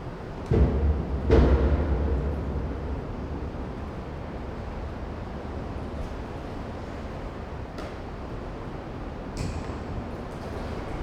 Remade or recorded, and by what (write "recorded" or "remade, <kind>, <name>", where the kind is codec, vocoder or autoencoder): recorded